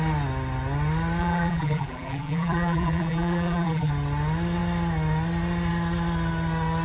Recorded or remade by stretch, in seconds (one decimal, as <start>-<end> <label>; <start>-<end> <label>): 0.0-1.2 recorded; 1.2-3.9 remade; 3.9-6.8 recorded